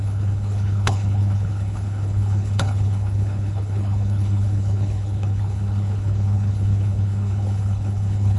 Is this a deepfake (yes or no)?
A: yes